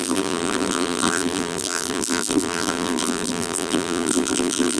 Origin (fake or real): fake